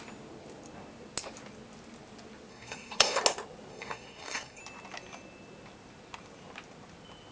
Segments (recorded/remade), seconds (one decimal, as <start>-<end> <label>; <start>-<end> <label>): 0.0-2.5 recorded; 2.5-3.2 remade; 3.2-3.7 recorded; 3.7-4.6 remade; 4.6-7.3 recorded